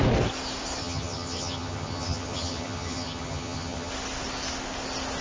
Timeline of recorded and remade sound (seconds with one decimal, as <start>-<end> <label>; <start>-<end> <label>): 0.0-0.8 recorded; 0.8-3.9 remade; 3.9-5.2 recorded